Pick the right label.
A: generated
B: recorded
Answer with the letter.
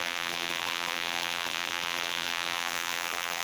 A